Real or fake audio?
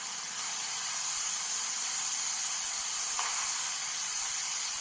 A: fake